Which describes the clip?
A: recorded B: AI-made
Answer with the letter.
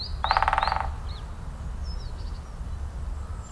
A